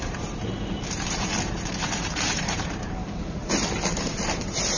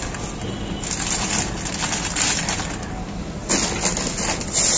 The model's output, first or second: first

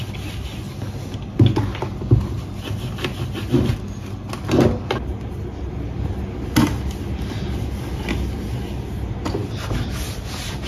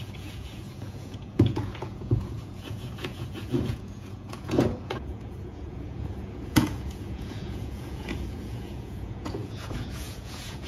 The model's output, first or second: second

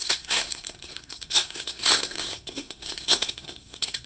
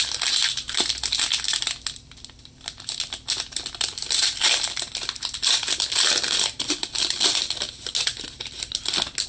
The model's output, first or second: first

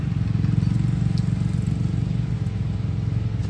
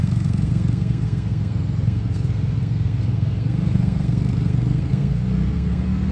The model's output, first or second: second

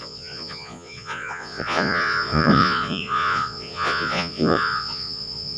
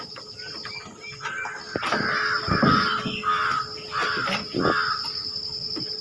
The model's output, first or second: first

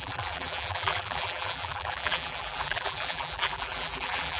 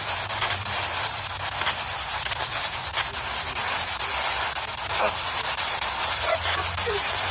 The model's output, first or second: first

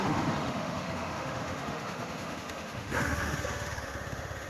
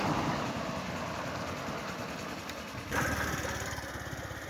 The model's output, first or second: first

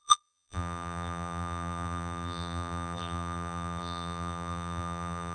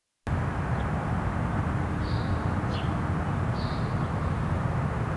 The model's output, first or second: first